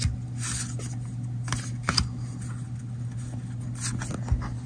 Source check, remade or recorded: recorded